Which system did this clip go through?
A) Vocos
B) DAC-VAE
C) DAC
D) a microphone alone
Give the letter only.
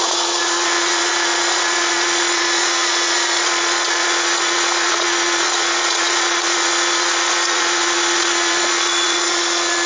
A